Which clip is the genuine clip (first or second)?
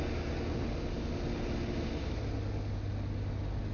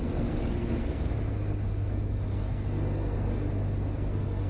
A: first